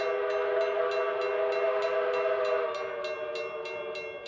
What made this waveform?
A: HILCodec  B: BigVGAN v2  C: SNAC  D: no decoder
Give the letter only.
D